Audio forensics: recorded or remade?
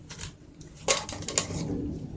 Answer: recorded